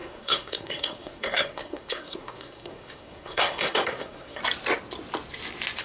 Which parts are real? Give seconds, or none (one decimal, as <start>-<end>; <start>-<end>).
4.4-5.8